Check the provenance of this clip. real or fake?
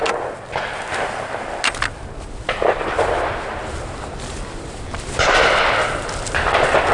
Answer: real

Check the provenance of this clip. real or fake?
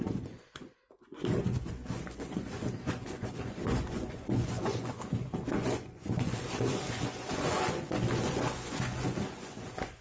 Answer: fake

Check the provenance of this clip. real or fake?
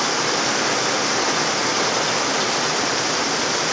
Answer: real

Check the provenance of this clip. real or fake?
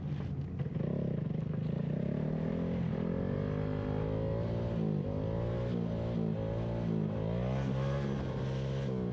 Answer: real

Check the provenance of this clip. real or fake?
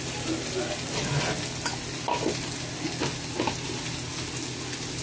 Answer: real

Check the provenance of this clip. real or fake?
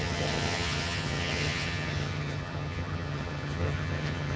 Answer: fake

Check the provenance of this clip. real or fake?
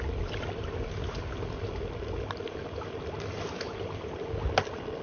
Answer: real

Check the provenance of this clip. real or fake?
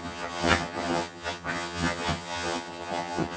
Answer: fake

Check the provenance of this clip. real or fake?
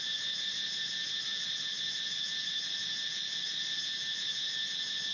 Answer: real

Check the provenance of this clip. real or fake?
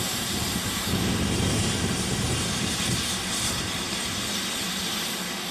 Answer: real